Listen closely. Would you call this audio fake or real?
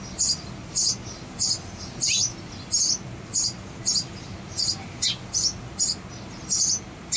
real